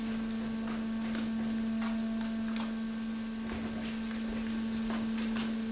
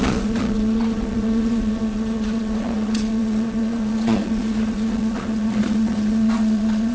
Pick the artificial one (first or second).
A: second